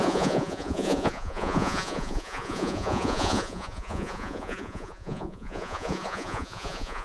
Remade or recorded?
remade